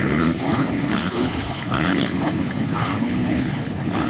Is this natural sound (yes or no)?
no